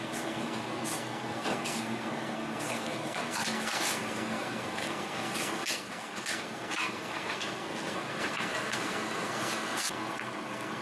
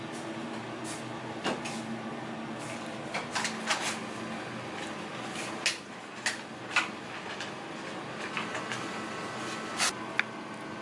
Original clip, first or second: second